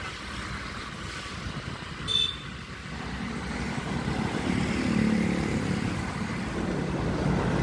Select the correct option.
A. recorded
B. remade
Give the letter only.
A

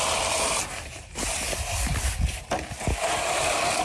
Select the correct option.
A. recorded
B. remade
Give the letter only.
A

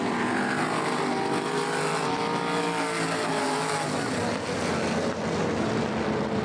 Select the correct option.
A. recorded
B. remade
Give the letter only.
A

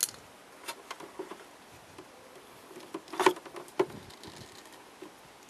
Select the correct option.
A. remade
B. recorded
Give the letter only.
B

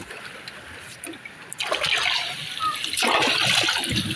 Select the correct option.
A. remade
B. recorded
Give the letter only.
B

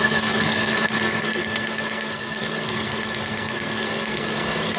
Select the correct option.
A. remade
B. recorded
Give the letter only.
A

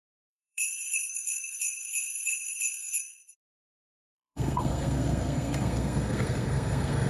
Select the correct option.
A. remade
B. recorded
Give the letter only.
A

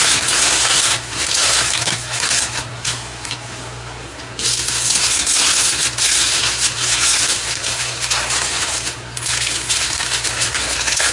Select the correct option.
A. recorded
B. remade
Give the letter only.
B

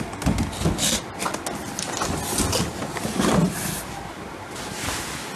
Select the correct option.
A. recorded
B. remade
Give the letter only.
A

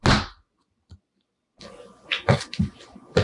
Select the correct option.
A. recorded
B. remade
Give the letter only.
A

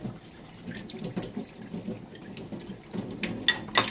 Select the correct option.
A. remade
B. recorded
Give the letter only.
B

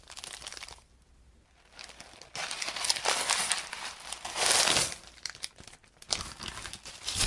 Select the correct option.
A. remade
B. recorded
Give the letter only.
B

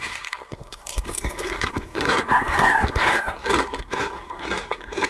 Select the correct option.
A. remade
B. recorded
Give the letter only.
A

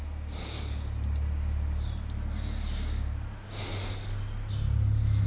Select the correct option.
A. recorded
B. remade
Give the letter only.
A